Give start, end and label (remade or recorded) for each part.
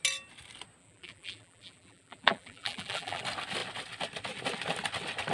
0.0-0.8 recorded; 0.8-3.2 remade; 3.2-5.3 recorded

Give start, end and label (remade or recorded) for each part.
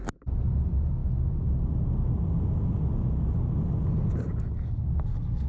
0.0-5.5 recorded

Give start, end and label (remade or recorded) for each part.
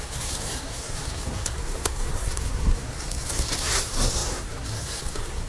0.0-5.5 remade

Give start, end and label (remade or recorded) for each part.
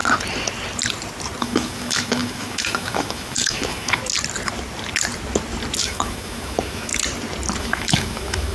0.0-1.4 recorded; 1.4-4.0 remade; 4.0-5.8 recorded; 5.8-6.9 remade; 6.9-7.6 recorded; 7.6-8.5 remade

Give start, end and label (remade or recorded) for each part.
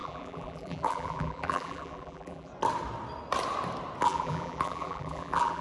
0.0-2.5 remade; 2.5-4.0 recorded; 4.0-5.6 remade